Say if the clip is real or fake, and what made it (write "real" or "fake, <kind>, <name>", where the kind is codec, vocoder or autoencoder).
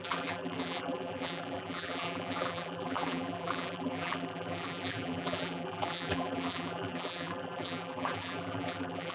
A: fake, vocoder, BigVGAN v2